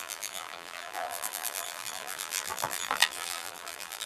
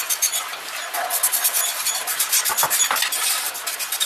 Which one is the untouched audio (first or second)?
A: second